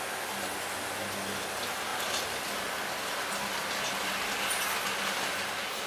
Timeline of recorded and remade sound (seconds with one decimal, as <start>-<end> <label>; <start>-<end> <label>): 0.0-5.9 recorded